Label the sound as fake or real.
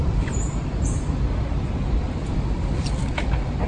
real